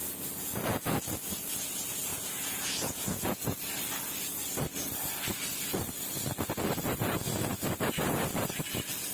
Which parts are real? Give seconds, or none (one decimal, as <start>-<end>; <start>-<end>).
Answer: 0.0-2.1; 3.2-9.1

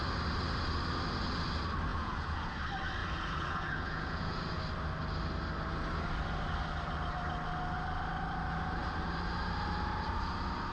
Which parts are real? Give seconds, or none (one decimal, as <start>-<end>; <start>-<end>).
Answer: 0.0-1.9; 2.6-3.0; 4.6-10.7

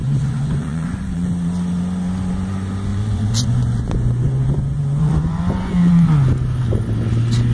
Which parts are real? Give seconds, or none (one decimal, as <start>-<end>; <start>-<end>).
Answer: 1.3-2.9; 5.7-7.5

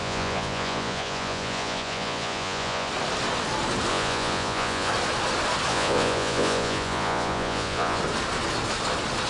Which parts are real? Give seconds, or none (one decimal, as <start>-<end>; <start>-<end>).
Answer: 2.9-3.9; 4.9-5.7; 8.0-9.3

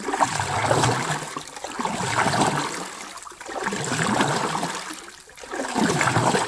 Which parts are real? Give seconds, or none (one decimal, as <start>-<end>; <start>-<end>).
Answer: 0.0-6.5

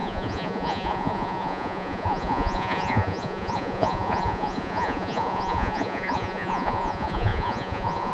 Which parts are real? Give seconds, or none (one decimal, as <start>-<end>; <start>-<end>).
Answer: none

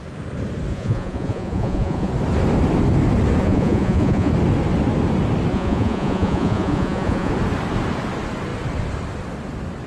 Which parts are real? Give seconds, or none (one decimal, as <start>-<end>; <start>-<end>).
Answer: 0.0-0.7; 2.1-3.4; 4.3-5.5; 7.3-9.9